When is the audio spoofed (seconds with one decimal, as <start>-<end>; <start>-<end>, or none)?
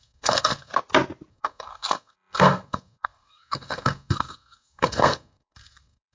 0.0-0.7; 1.3-6.1